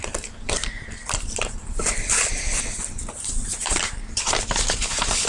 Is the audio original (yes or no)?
no